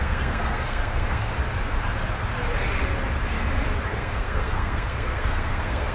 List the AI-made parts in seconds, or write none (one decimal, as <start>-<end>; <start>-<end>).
0.0-1.3; 3.9-5.9

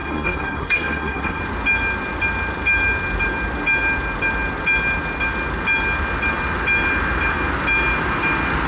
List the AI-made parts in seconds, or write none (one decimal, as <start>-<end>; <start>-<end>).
0.0-1.4